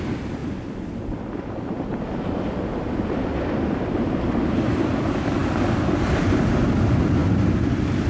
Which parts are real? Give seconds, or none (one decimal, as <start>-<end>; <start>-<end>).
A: 0.0-8.1